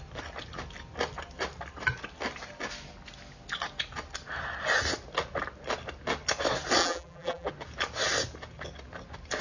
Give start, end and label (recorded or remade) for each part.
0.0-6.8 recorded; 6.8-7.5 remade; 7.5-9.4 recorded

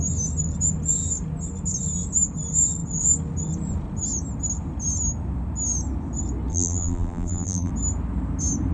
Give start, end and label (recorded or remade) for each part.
0.0-6.5 recorded; 6.5-7.7 remade; 7.7-8.7 recorded

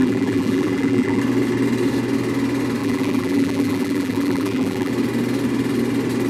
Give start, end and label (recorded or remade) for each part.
0.0-1.2 remade; 1.2-2.8 recorded; 2.8-4.9 remade; 4.9-6.3 recorded

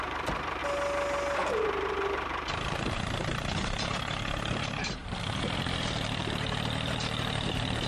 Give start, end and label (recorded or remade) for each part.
0.0-0.6 remade; 0.6-1.5 recorded; 1.5-7.9 remade

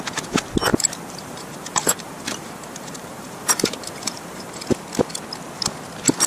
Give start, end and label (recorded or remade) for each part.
0.0-0.7 recorded; 0.7-4.5 remade; 4.5-6.3 recorded

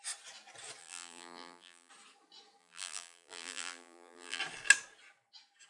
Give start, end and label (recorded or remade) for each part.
0.0-0.8 recorded; 0.8-1.9 remade; 1.9-2.6 recorded; 2.6-4.4 remade; 4.4-5.7 recorded